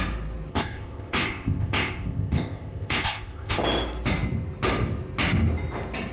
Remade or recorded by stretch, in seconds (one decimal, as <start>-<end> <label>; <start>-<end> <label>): 0.0-0.5 recorded; 0.5-3.6 remade; 3.6-6.1 recorded